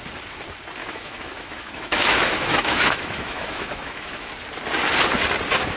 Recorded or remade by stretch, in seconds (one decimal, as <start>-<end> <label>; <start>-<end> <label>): 0.0-0.8 recorded; 0.8-4.3 remade; 4.3-5.8 recorded

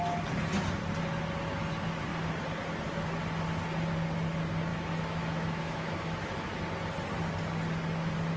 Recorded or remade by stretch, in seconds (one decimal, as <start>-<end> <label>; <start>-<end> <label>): 0.0-4.7 recorded; 4.7-6.6 remade; 6.6-8.4 recorded

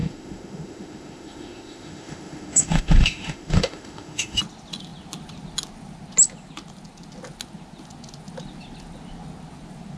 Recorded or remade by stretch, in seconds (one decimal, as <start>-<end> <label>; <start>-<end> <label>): 0.0-4.4 remade; 4.4-10.0 recorded

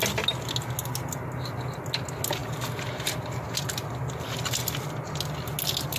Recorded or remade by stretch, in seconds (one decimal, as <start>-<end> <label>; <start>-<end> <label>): 0.0-6.0 recorded

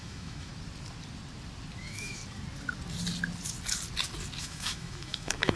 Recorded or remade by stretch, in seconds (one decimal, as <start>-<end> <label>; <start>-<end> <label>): 0.0-0.5 remade; 0.5-1.8 recorded; 1.8-2.2 remade; 2.2-4.4 recorded; 4.4-5.6 remade

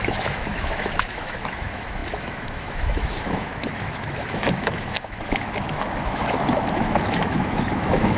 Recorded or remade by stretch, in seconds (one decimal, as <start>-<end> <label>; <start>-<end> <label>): 0.0-8.2 remade